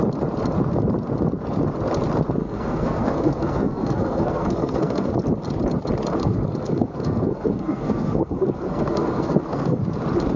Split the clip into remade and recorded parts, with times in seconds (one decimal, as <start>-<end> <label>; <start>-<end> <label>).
0.0-2.4 recorded; 2.4-5.1 remade; 5.1-6.2 recorded; 6.2-9.8 remade; 9.8-10.4 recorded